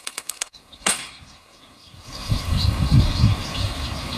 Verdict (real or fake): fake